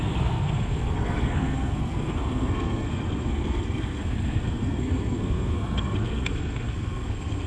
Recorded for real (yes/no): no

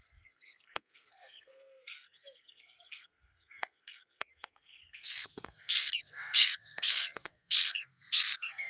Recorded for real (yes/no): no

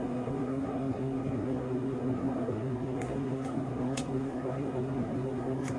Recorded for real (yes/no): no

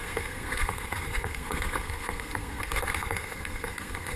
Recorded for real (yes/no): no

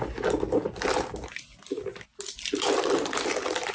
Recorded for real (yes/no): yes